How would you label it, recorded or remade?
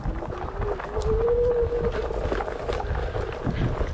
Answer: recorded